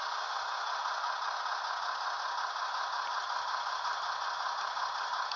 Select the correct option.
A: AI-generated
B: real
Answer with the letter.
B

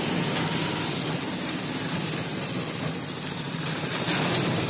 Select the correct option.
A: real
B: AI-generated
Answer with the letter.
A